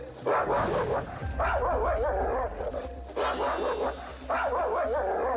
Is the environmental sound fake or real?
real